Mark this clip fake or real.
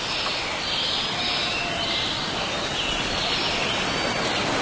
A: real